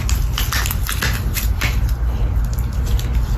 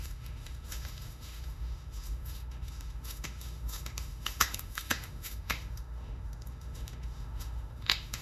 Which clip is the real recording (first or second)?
first